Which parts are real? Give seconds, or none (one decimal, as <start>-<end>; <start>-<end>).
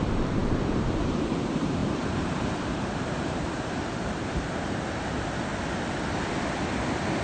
5.5-7.2